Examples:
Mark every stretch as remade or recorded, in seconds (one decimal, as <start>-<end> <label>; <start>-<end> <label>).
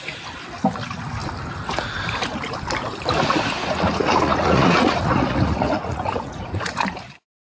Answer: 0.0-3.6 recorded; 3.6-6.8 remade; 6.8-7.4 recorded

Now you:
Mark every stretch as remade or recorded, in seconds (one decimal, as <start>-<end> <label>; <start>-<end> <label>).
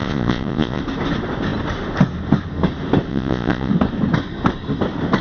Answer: 0.0-0.8 remade; 0.8-3.1 recorded; 3.1-3.7 remade; 3.7-5.2 recorded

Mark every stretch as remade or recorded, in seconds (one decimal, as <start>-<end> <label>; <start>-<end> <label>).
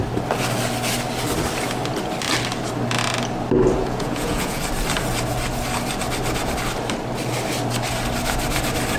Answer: 0.0-3.8 recorded; 3.8-4.6 remade; 4.6-9.0 recorded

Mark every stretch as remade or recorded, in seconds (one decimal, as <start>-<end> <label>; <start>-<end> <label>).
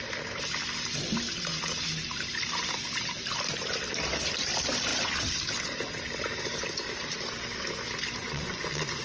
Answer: 0.0-8.2 recorded; 8.2-9.0 remade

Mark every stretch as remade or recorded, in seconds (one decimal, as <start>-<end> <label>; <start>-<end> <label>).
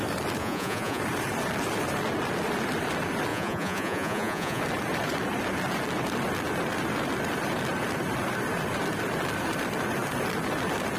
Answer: 0.0-0.4 recorded; 0.4-1.0 remade; 1.0-3.3 recorded; 3.3-4.6 remade; 4.6-11.0 recorded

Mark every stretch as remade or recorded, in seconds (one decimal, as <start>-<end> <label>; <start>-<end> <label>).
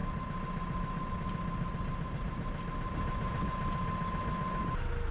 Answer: 0.0-5.1 recorded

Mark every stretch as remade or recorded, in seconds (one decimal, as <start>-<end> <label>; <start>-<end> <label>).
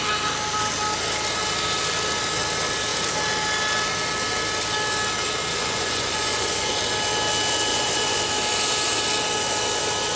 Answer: 0.0-5.5 recorded; 5.5-6.7 remade; 6.7-7.7 recorded; 7.7-8.3 remade; 8.3-10.2 recorded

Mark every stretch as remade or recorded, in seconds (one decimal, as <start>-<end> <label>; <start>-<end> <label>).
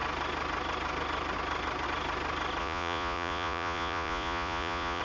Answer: 0.0-2.6 recorded; 2.6-5.0 remade